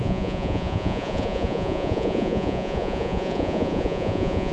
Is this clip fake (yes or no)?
yes